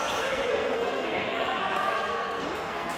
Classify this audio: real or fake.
fake